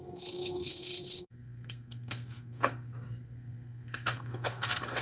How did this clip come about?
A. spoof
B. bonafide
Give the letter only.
A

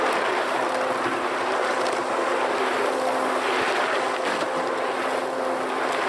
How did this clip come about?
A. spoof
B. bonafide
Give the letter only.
B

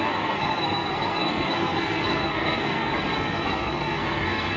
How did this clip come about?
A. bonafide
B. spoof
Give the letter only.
B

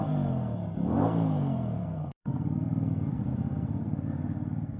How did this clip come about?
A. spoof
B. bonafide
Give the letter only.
A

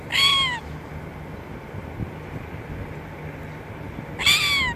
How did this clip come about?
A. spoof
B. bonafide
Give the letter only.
B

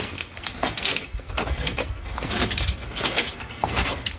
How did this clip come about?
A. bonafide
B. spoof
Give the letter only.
B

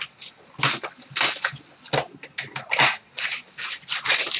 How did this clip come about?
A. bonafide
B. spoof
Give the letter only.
A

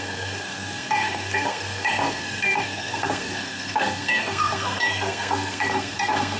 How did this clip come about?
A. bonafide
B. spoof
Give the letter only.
B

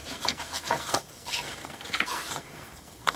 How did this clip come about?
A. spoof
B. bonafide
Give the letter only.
A